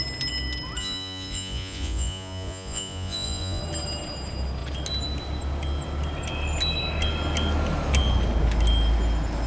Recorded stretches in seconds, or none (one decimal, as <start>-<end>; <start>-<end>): 0.0-0.8; 3.6-9.5